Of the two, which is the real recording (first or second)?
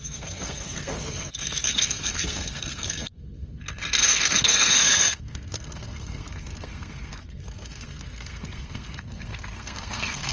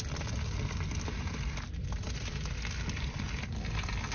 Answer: second